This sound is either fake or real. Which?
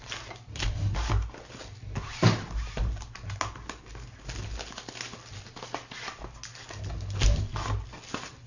real